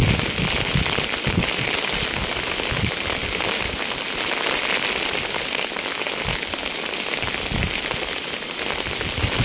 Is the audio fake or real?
real